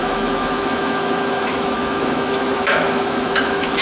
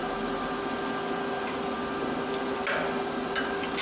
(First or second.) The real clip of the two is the second